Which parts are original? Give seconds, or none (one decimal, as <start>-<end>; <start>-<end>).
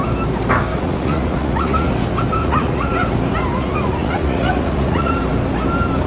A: 0.0-0.7; 1.9-2.4; 2.9-3.5; 5.1-6.1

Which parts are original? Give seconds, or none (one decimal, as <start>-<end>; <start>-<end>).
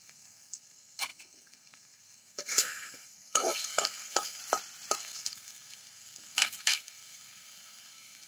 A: 4.4-5.0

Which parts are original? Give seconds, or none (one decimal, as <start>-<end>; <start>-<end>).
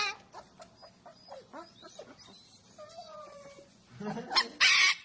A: 0.0-1.1; 2.2-3.0; 4.2-5.0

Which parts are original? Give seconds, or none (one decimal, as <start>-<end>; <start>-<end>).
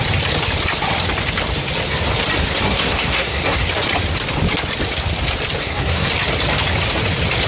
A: 0.0-2.5; 3.7-5.6; 6.1-7.5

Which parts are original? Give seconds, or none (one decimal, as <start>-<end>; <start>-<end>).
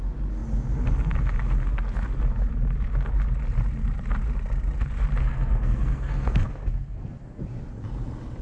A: 0.0-5.2; 7.4-8.4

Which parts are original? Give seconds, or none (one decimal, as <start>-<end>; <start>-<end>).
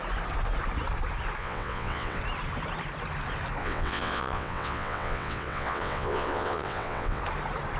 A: 0.0-1.4; 2.2-3.6; 7.2-7.8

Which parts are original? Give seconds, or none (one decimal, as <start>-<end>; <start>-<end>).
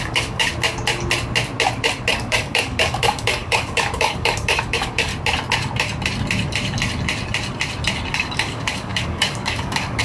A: 0.5-2.1; 5.1-8.1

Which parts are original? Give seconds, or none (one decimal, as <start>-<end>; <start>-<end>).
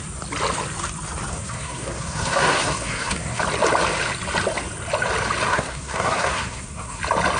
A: 0.0-1.3; 3.4-5.5; 7.0-7.4